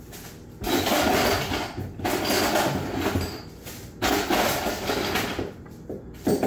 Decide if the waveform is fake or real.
real